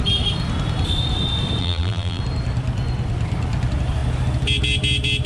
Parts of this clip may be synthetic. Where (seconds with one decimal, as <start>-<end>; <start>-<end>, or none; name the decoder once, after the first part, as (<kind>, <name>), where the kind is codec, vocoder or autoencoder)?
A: 1.6-2.2 (vocoder, BigVGAN v2)